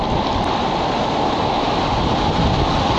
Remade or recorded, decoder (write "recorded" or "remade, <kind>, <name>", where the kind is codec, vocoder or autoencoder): recorded